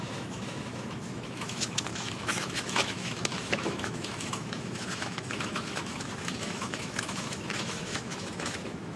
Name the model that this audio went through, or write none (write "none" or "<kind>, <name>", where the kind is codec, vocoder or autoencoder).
autoencoder, DAC-VAE